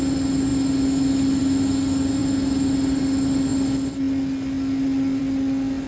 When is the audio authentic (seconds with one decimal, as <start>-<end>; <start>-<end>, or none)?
0.0-5.9

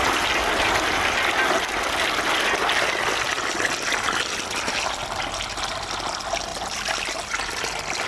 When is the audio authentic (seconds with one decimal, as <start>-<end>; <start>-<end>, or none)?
0.0-8.1

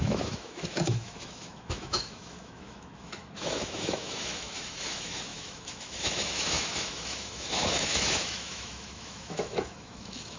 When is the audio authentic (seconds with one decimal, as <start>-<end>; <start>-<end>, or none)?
none

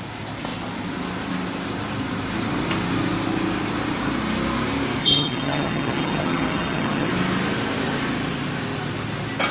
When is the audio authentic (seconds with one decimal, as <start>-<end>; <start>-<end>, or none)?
0.0-5.0; 7.1-9.5

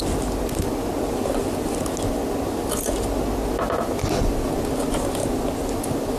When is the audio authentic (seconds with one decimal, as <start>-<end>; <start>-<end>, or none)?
0.0-6.2